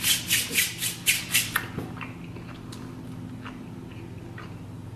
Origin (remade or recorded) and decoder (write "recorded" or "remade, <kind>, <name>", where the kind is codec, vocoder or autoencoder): recorded